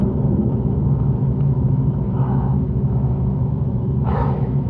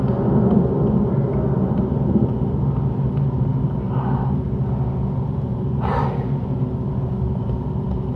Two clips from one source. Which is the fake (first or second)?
first